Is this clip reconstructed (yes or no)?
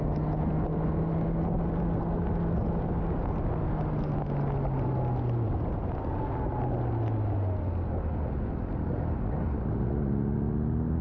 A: no